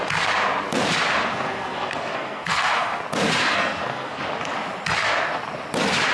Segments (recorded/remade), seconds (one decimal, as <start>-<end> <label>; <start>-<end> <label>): 0.0-1.3 recorded; 1.3-3.0 remade; 3.0-3.5 recorded; 3.5-4.2 remade; 4.2-6.1 recorded